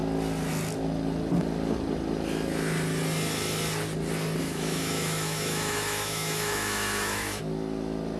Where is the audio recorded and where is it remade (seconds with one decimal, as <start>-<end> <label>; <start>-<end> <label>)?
0.0-4.4 recorded; 4.4-7.4 remade; 7.4-8.2 recorded